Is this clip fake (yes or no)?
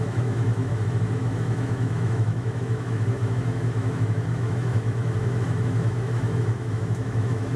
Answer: yes